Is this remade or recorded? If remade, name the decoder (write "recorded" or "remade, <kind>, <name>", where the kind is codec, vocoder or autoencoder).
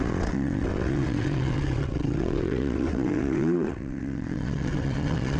remade, vocoder, WaveNeXt